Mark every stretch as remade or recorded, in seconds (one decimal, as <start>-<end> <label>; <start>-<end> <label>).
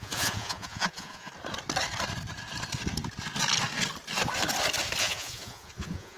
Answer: 0.0-1.3 remade; 1.3-5.0 recorded; 5.0-6.2 remade